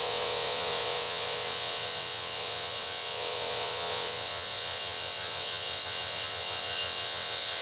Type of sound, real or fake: fake